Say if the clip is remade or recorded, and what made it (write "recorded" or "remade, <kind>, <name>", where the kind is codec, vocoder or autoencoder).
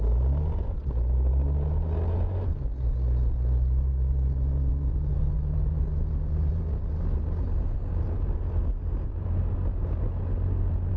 recorded